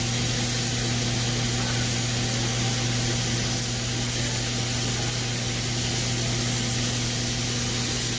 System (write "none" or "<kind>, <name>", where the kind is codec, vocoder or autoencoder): none